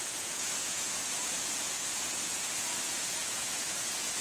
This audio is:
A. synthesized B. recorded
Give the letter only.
A